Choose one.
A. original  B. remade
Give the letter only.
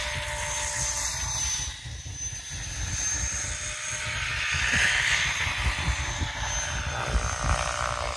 A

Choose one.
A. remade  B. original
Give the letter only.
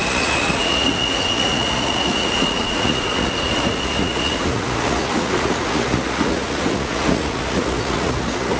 A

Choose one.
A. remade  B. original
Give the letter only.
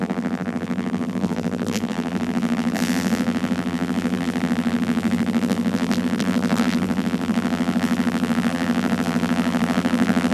A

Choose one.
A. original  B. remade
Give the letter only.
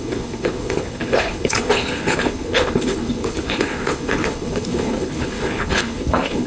B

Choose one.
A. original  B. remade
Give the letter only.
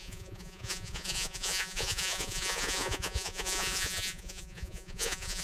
B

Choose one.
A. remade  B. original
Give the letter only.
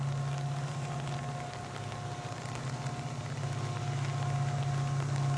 B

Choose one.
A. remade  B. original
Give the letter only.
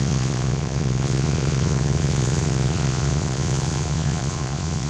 A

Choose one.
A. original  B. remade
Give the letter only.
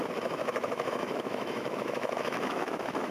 B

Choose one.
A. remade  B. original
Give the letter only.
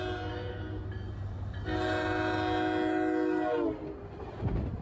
B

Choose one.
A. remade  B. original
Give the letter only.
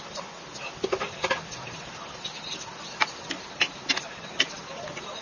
B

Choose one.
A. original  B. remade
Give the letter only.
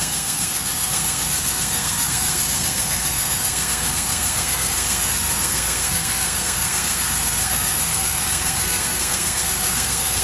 B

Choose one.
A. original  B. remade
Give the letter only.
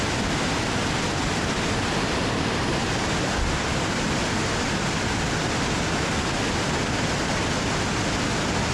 A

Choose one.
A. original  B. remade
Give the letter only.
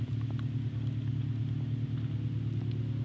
A